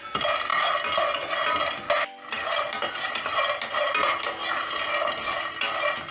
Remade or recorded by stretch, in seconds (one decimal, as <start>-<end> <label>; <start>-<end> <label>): 0.0-6.1 recorded